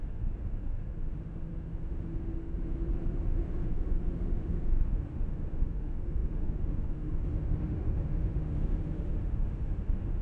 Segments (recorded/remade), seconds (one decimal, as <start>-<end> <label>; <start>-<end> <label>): 0.0-10.2 remade

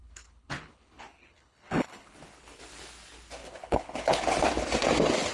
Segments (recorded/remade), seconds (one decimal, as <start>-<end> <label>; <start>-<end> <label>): 0.0-2.6 remade; 2.6-3.4 recorded; 3.4-4.4 remade; 4.4-5.3 recorded

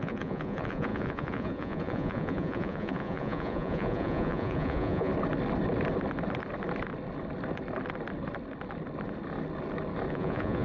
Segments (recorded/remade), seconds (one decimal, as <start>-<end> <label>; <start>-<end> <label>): 0.0-5.1 remade; 5.1-10.1 recorded; 10.1-10.6 remade

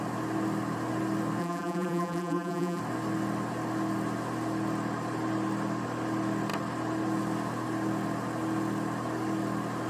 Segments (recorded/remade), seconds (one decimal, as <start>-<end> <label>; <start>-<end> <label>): 0.0-1.4 recorded; 1.4-2.8 remade; 2.8-9.9 recorded

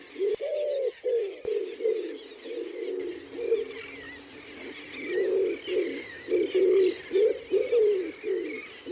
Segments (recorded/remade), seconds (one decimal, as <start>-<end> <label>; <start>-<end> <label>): 0.0-8.9 recorded

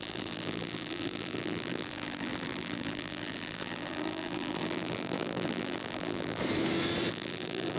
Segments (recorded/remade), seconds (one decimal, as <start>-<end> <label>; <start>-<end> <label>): 0.0-6.4 remade; 6.4-7.1 recorded; 7.1-7.8 remade

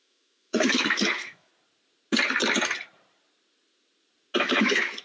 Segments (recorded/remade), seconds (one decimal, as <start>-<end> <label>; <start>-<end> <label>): 0.0-1.5 remade; 1.5-4.4 recorded; 4.4-5.0 remade

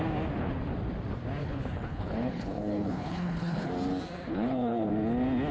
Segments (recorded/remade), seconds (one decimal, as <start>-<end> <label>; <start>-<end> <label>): 0.0-1.4 recorded; 1.4-3.7 remade; 3.7-4.3 recorded; 4.3-4.9 remade; 4.9-5.5 recorded